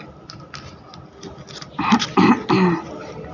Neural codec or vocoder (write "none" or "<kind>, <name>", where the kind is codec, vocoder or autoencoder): none